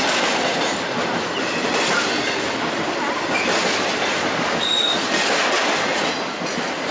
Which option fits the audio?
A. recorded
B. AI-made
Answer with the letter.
A